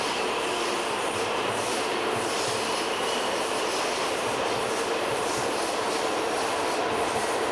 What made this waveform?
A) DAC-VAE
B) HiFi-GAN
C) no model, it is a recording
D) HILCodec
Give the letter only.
C